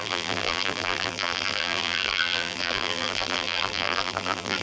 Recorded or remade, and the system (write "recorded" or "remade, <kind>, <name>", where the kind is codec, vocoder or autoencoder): remade, vocoder, BigVGAN v2